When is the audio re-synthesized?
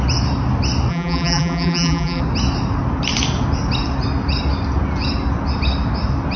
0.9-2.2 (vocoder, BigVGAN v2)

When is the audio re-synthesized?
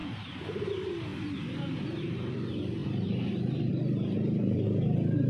0.0-1.1 (vocoder, BigVGAN v2); 2.0-5.3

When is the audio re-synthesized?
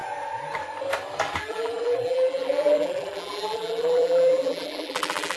1.4-5.4 (vocoder, BigVGAN v2)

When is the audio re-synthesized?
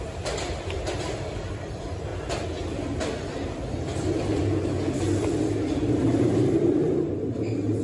0.0-2.1 (vocoder, BigVGAN v2); 5.6-7.8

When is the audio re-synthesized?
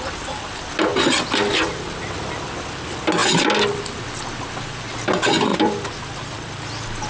0.9-2.3 (vocoder, BigVGAN v2); 5.5-6.6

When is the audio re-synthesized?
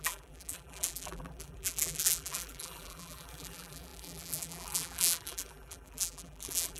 0.0-6.8 (vocoder, BigVGAN v2)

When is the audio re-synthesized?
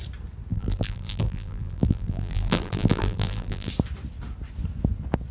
0.5-3.7 (vocoder, BigVGAN v2)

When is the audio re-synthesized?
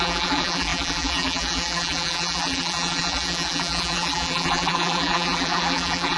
0.0-6.2 (vocoder, BigVGAN v2)